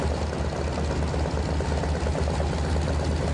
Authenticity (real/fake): real